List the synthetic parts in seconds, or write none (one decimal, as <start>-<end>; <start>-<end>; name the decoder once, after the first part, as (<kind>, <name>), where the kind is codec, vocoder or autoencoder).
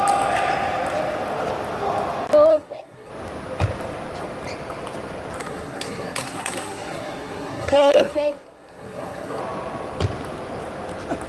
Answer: 2.5-3.1 (codec, SNAC); 5.4-9.4